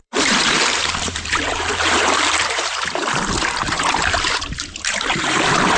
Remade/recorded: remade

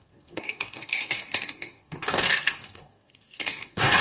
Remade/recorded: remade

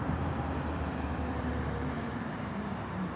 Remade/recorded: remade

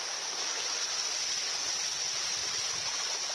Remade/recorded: recorded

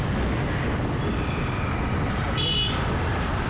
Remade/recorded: recorded